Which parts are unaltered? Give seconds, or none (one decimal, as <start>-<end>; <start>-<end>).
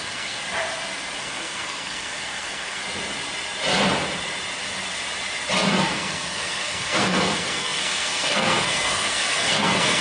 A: 0.4-1.2; 2.8-5.7